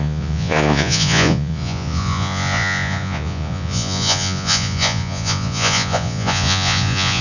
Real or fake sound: fake